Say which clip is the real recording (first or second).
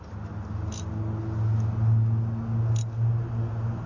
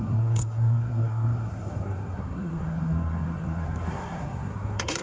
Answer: first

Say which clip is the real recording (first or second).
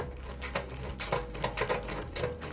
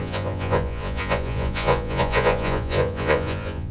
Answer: first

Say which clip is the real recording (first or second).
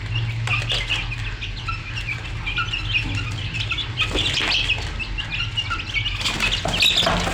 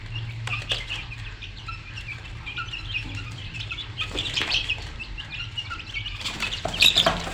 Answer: first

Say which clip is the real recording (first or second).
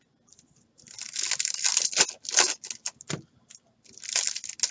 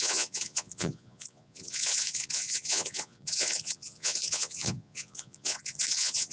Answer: first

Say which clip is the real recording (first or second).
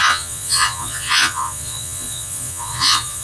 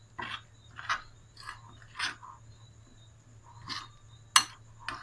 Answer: second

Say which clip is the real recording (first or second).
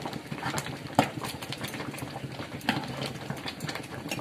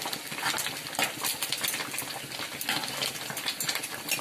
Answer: second